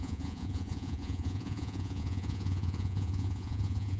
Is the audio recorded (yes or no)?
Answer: no